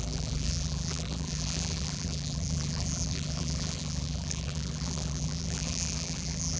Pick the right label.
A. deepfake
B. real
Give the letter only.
A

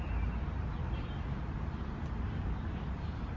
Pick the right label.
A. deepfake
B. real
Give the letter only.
A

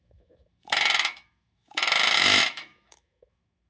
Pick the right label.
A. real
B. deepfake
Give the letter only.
B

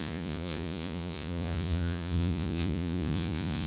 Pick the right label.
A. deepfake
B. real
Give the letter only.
A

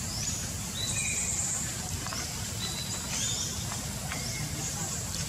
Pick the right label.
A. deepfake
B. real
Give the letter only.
B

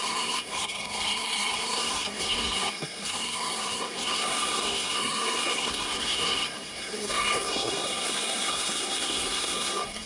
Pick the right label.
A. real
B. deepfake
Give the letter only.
B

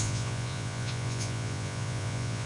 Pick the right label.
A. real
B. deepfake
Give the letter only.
B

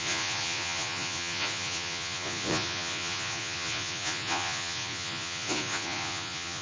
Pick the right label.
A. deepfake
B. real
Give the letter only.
A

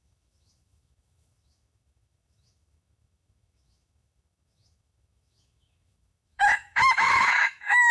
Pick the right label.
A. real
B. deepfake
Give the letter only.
B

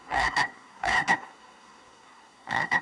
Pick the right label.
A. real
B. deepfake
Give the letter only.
B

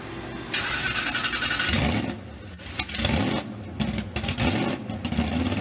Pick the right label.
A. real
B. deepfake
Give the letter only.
A